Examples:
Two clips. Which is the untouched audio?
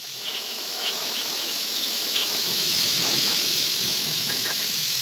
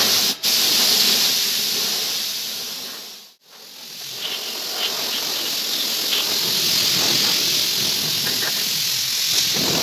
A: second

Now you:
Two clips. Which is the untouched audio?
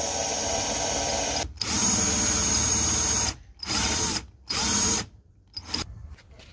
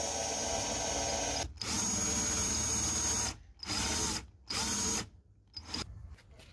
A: second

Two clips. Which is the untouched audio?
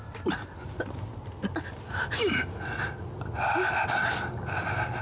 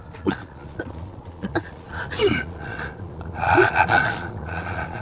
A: first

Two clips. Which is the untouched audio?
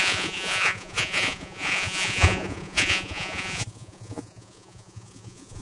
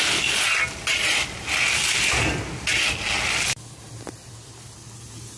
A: second